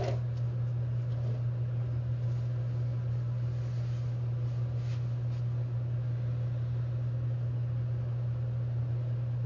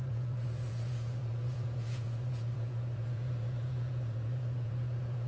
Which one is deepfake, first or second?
second